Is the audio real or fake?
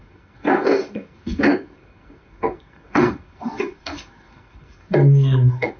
fake